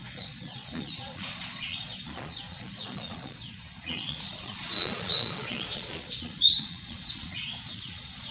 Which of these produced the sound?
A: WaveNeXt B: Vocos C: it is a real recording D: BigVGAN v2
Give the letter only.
B